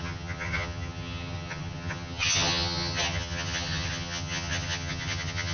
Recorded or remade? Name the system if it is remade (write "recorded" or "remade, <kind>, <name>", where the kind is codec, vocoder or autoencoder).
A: remade, vocoder, HiFi-GAN